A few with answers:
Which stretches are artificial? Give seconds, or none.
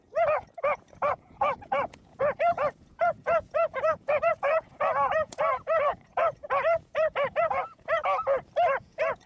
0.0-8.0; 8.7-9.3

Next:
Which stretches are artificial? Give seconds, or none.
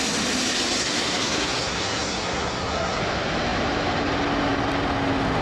0.8-3.0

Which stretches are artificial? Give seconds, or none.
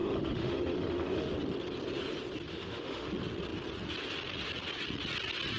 0.0-1.3; 2.5-3.1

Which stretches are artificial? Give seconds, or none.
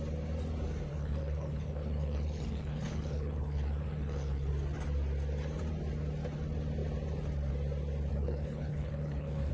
0.9-4.5; 8.1-9.5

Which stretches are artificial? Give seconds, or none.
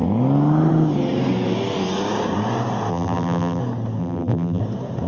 2.9-3.6; 4.0-4.6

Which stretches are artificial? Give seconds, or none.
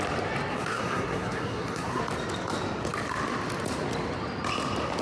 0.5-2.0